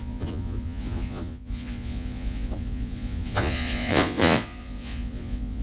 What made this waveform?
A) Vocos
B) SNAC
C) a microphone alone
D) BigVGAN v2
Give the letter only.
A